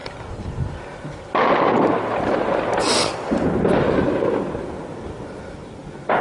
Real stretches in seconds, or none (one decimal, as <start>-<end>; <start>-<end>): 0.8-6.2

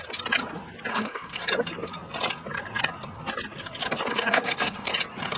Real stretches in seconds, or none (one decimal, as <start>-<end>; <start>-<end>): 0.0-0.9; 1.4-4.1; 4.9-5.4

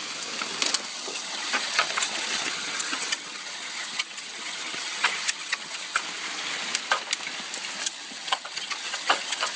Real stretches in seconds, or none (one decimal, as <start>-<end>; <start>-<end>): 0.0-0.9; 6.0-7.8

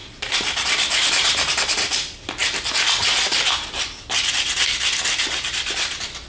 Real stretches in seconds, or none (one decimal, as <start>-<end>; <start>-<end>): 0.0-6.3